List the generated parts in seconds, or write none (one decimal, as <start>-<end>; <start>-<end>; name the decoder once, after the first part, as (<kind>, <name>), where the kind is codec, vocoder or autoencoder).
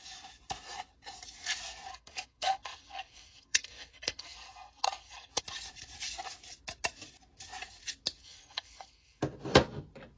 1.9-5.4 (codec, SNAC); 8.2-9.2